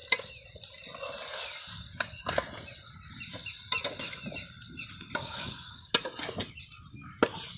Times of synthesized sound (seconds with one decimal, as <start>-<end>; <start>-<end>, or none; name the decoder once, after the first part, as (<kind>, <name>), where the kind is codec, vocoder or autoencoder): 5.2-5.9 (codec, DAC)